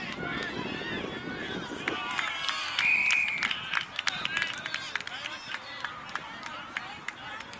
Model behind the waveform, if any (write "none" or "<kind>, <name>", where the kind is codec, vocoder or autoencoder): none